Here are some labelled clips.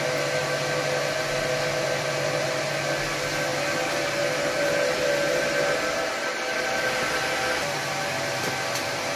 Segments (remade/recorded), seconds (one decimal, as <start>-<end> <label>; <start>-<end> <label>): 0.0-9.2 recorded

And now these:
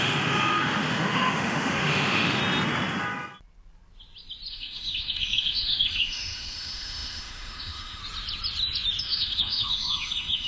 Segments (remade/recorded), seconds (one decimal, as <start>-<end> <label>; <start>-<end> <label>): 0.0-2.4 remade; 2.4-4.5 recorded; 4.5-8.0 remade; 8.0-9.0 recorded; 9.0-10.5 remade

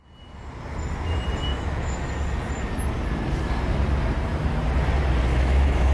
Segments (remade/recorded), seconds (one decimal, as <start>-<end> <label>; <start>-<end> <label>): 0.0-1.5 recorded; 1.5-2.0 remade; 2.0-5.3 recorded; 5.3-5.9 remade